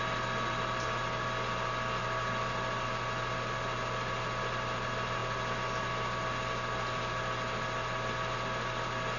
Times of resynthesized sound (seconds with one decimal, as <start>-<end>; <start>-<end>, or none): none